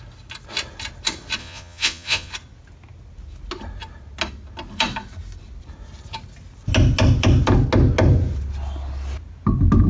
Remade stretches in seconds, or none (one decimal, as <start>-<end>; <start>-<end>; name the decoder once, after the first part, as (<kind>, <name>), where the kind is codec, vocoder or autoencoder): 1.4-2.3 (vocoder, Vocos)